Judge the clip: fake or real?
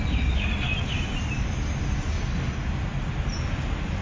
real